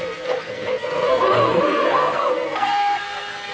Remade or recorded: remade